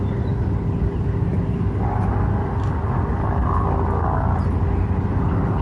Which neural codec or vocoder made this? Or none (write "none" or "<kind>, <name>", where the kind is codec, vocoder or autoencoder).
none